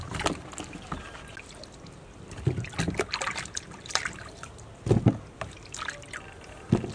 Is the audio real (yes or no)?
yes